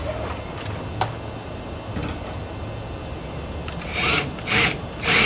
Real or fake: real